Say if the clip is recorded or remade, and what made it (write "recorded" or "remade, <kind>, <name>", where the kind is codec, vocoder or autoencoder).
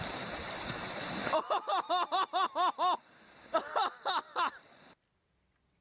recorded